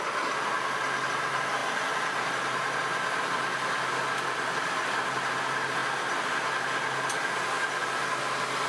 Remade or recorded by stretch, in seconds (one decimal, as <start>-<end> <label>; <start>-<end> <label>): 0.0-8.7 recorded